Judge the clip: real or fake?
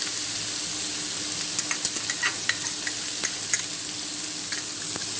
real